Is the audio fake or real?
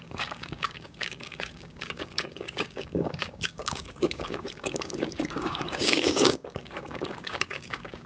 fake